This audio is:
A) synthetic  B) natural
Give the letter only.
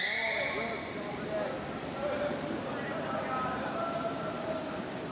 B